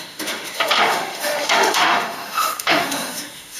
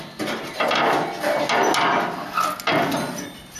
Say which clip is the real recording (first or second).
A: second